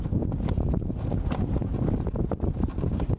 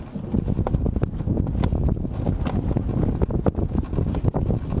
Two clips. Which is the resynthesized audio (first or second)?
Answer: first